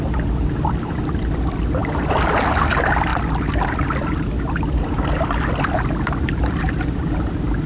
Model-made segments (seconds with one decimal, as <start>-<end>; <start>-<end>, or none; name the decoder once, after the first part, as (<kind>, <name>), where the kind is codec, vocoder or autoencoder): none